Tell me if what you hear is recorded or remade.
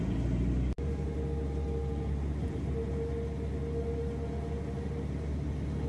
recorded